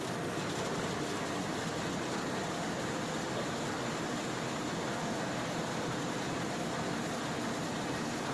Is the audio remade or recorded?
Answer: recorded